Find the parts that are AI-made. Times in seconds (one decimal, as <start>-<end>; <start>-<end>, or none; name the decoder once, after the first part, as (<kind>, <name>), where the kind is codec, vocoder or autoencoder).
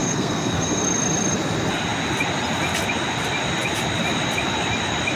0.0-0.8 (codec, SNAC)